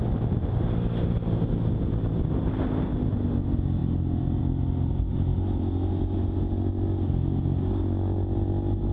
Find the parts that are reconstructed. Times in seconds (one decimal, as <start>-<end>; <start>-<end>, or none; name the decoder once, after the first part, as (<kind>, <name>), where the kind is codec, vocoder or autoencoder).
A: none